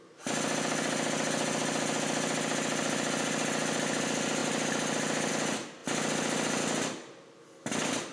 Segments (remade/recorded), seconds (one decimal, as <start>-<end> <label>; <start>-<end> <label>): 0.0-8.1 recorded